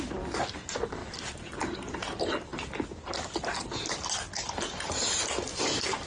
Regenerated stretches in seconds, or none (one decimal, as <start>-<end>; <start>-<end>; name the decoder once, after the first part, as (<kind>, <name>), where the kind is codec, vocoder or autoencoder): 1.0-1.6 (vocoder, BigVGAN v2); 5.5-6.1